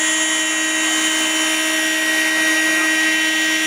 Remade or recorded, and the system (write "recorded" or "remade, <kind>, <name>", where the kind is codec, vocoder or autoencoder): recorded